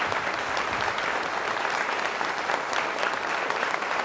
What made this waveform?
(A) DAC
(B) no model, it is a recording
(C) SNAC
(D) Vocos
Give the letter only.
B